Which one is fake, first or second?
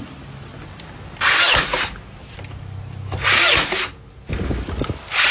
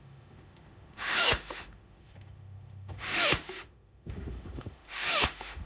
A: second